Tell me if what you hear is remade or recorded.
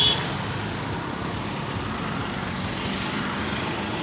recorded